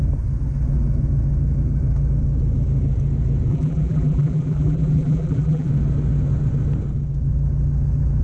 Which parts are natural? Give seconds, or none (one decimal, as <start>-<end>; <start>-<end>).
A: 0.0-3.5; 5.7-8.2